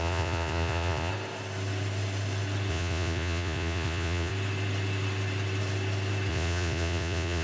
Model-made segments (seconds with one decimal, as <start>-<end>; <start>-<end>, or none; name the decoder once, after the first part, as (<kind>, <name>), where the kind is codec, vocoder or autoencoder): 0.0-1.1 (vocoder, Vocos); 2.7-4.3; 6.3-7.4